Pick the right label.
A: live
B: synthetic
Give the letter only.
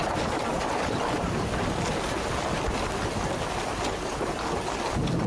A